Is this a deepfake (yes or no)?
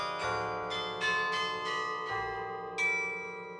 no